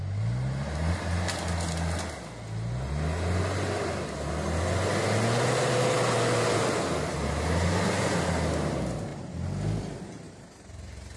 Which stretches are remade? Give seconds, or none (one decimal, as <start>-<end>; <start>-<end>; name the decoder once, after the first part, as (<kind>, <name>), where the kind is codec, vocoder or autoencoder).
none